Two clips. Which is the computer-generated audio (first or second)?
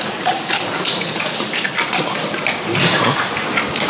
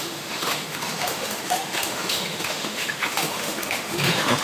second